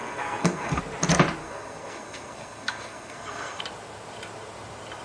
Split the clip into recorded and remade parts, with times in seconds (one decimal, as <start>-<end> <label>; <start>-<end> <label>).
0.0-0.8 remade; 0.8-1.4 recorded; 1.4-3.6 remade; 3.6-5.0 recorded